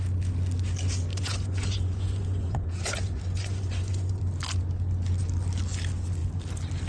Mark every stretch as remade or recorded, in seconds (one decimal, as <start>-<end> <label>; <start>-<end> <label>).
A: 0.0-1.1 recorded; 1.1-4.2 remade; 4.2-6.9 recorded